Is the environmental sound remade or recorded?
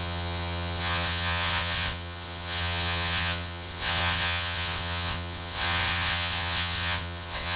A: remade